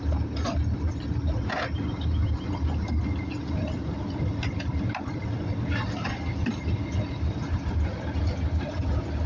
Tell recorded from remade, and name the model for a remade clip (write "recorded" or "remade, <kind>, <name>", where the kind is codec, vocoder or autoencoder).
recorded